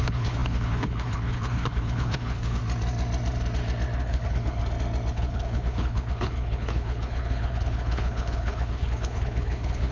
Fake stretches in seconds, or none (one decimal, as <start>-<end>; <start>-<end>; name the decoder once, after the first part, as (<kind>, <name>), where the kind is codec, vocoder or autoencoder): 0.0-2.6 (codec, HILCodec); 4.0-4.6; 5.1-9.9